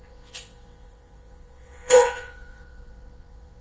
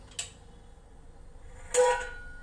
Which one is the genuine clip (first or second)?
second